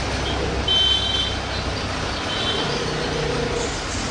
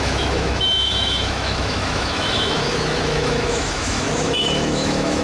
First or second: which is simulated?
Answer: second